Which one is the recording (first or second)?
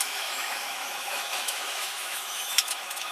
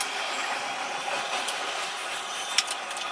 second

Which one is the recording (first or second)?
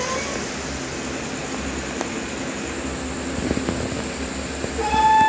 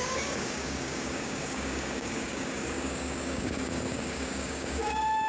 first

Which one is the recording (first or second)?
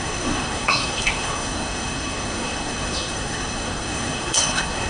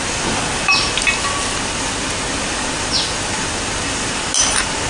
second